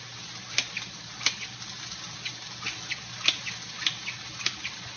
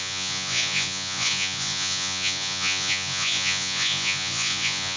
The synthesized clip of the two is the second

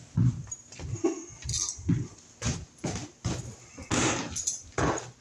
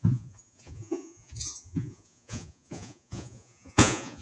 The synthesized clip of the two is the second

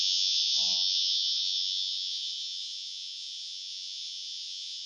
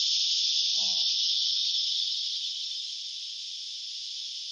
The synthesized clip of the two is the first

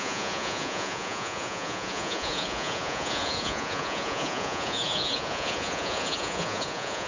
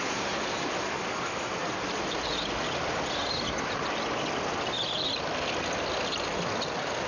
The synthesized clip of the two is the first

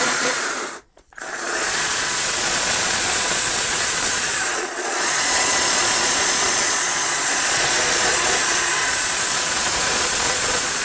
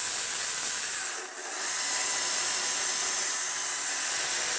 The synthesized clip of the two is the first